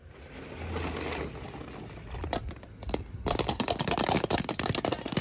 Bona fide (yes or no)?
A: yes